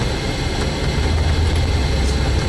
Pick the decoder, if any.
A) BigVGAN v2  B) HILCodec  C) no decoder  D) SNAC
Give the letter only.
C